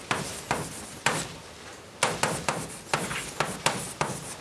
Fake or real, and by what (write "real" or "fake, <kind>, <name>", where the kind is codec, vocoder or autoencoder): real